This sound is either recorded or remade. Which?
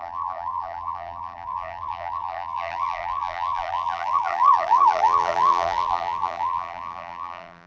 remade